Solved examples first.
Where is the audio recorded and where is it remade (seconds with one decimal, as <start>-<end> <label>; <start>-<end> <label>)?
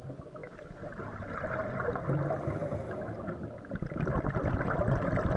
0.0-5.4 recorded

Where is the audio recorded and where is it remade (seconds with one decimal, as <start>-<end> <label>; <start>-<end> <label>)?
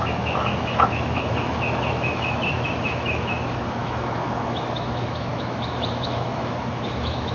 0.0-7.3 remade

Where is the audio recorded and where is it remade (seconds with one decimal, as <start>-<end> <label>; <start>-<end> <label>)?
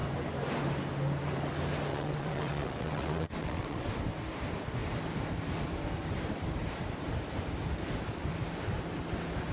0.0-1.9 recorded; 1.9-3.9 remade; 3.9-9.5 recorded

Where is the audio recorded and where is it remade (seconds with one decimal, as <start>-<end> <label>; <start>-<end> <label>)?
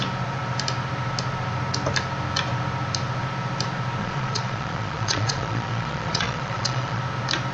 0.0-4.0 recorded; 4.0-7.0 remade; 7.0-7.5 recorded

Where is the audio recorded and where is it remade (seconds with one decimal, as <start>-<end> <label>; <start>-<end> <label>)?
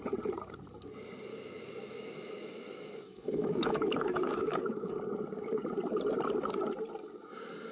0.0-1.3 recorded; 1.3-4.9 remade; 4.9-7.7 recorded